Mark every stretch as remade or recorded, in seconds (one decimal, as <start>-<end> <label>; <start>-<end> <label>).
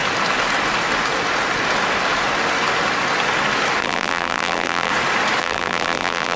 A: 0.0-3.8 recorded; 3.8-4.9 remade; 4.9-5.4 recorded; 5.4-6.4 remade